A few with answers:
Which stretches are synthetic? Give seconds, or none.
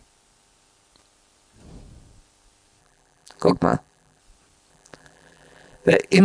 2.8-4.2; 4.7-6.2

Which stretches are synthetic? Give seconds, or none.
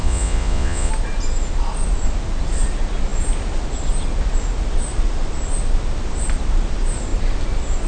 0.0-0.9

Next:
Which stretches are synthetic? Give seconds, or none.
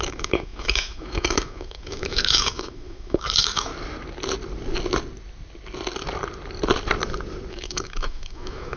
0.0-3.7; 7.5-8.8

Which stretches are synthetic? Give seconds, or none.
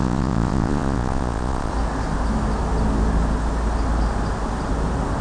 0.0-1.7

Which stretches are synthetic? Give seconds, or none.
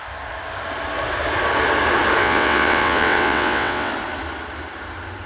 2.2-3.9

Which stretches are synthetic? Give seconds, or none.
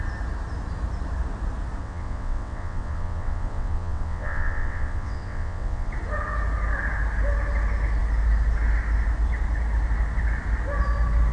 1.8-5.9